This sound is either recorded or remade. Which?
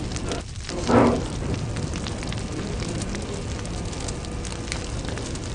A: recorded